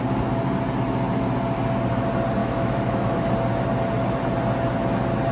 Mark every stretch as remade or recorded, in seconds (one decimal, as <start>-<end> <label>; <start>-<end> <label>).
0.0-2.4 recorded; 2.4-3.3 remade; 3.3-5.3 recorded

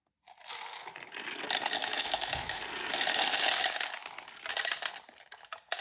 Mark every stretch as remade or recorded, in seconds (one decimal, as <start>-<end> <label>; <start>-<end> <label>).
0.0-1.8 recorded; 1.8-2.6 remade; 2.6-5.8 recorded